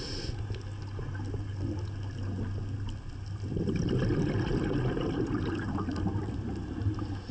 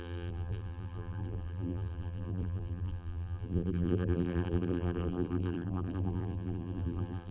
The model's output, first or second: second